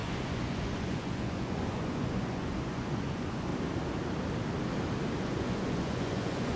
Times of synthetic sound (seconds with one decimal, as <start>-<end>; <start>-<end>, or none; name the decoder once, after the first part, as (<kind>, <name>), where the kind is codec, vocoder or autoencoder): 0.0-3.5 (vocoder, Vocos); 5.2-6.6

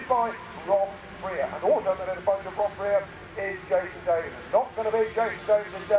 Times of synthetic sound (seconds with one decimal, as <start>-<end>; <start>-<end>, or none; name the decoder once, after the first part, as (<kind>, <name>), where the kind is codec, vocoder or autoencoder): none

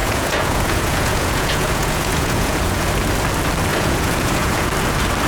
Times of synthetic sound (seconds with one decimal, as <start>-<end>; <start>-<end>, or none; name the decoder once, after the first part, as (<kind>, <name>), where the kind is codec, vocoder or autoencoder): 0.0-2.9 (vocoder, Vocos); 3.7-4.7

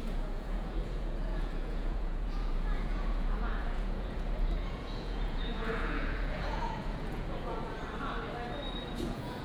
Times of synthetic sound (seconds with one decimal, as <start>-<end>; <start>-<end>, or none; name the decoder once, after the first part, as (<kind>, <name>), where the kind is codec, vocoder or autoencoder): 0.0-7.8 (vocoder, Vocos); 8.9-9.4

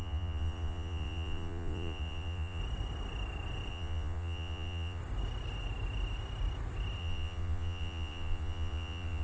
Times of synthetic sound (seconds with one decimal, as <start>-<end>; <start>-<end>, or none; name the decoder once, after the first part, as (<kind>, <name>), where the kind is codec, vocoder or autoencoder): 0.0-2.6 (vocoder, Vocos); 3.7-5.0; 7.0-9.2

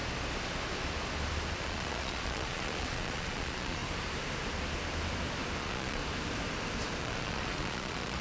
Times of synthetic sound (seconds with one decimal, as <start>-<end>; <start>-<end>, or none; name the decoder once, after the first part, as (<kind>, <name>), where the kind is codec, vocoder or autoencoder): 1.6-3.8 (vocoder, Vocos); 5.6-6.0; 7.0-8.2